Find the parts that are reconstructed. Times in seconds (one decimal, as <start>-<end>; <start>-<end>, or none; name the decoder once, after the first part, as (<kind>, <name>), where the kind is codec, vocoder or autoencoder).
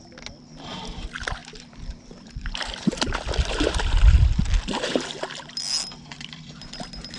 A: 1.4-5.6 (vocoder, BigVGAN v2); 6.1-7.2